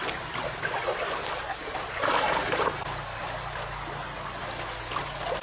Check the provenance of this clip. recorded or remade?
recorded